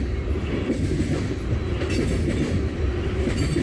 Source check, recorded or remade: recorded